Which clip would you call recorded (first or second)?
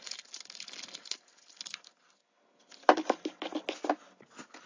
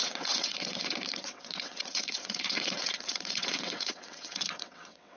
first